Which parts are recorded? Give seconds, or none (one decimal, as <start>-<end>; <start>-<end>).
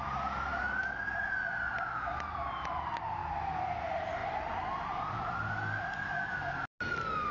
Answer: 0.0-4.2; 5.5-7.3